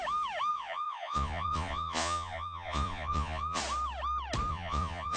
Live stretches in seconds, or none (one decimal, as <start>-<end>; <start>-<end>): 0.0-0.5; 3.6-4.5